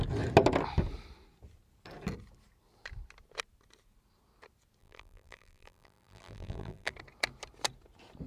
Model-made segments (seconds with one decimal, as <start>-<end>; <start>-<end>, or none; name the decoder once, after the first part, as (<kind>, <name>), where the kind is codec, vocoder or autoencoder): 4.8-6.9 (vocoder, BigVGAN v2)